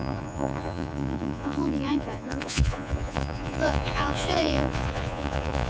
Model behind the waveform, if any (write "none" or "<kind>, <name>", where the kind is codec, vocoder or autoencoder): vocoder, Vocos